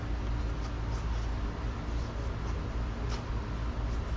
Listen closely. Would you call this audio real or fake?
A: real